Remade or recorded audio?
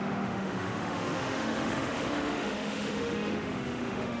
remade